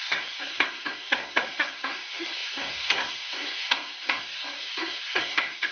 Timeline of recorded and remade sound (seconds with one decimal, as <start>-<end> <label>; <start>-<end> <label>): 0.0-5.7 remade